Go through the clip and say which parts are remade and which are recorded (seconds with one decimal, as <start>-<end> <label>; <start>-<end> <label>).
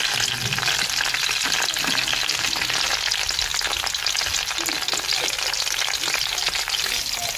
0.0-7.4 recorded